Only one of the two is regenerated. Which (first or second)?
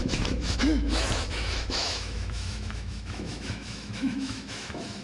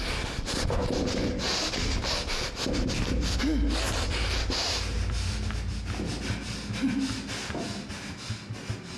first